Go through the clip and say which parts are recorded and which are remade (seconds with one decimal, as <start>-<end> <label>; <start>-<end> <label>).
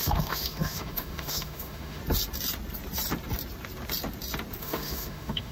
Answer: 0.0-2.0 remade; 2.0-4.6 recorded; 4.6-5.5 remade